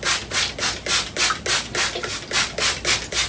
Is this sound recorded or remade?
recorded